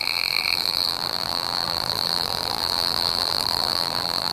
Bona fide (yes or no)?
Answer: no